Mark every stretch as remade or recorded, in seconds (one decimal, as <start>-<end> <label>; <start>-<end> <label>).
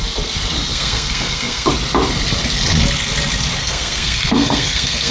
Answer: 0.0-0.7 recorded; 0.7-1.7 remade; 1.7-3.6 recorded; 3.6-5.1 remade